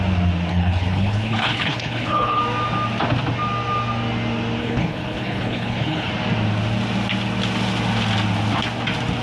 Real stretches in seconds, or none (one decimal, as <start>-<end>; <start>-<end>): 0.0-0.5; 2.4-4.6; 6.1-9.2